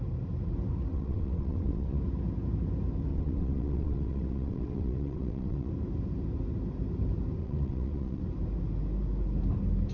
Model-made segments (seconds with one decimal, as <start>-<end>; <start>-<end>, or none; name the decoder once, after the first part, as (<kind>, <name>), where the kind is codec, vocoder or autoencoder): 0.9-2.0 (vocoder, WaveNeXt); 3.1-5.7; 7.4-8.2